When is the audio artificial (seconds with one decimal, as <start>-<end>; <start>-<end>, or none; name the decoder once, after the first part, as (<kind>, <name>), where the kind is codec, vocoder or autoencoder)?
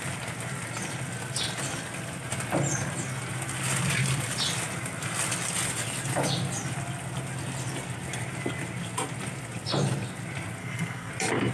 10.6-11.1 (codec, SNAC)